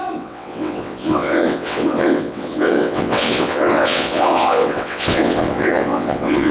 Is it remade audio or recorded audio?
remade